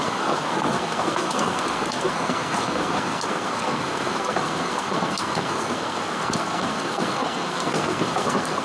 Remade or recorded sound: remade